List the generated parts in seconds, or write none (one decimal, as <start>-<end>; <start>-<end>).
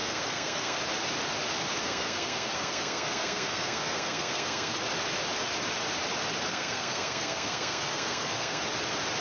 0.0-0.8; 1.8-4.8; 6.5-8.6